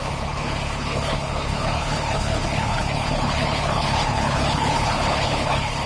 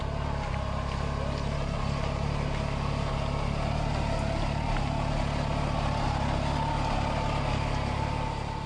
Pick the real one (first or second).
second